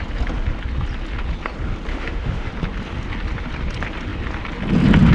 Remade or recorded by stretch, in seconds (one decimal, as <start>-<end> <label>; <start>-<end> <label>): 0.0-1.9 recorded; 1.9-2.5 remade; 2.5-5.1 recorded